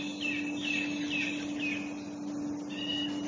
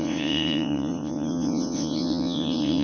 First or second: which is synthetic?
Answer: second